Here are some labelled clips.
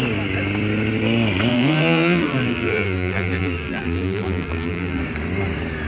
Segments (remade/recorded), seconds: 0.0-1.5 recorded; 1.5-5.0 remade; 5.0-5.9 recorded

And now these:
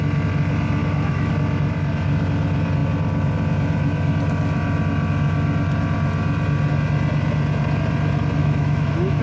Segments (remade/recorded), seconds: 0.0-0.8 recorded; 0.8-1.3 remade; 1.3-8.4 recorded; 8.4-9.2 remade

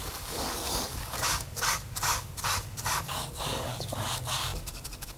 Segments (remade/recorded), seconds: 0.0-5.2 remade

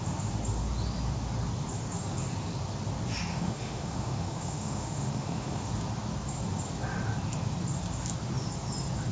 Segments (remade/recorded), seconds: 0.0-3.3 recorded; 3.3-5.7 remade; 5.7-9.1 recorded

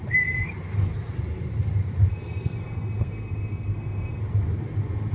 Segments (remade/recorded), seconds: 0.0-2.1 recorded; 2.1-4.2 remade; 4.2-5.1 recorded

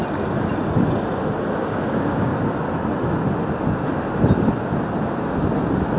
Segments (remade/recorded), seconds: 0.0-1.6 recorded; 1.6-2.3 remade; 2.3-6.0 recorded